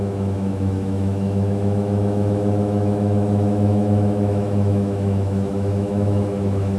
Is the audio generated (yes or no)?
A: yes